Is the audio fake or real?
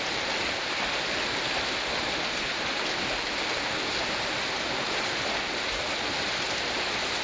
real